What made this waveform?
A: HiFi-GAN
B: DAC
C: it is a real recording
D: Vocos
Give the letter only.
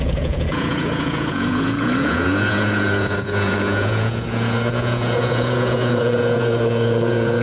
D